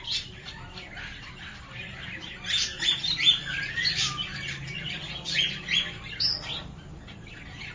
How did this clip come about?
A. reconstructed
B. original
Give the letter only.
B